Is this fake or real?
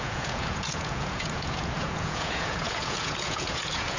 fake